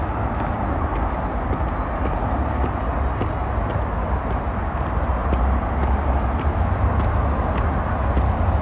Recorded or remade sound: recorded